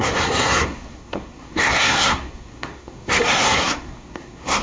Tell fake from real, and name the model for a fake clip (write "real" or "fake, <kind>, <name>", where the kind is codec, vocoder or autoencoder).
fake, codec, SNAC